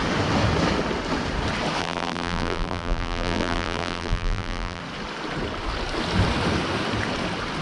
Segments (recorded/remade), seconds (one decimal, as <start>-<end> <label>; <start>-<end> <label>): 0.0-1.8 recorded; 1.8-4.8 remade; 4.8-7.6 recorded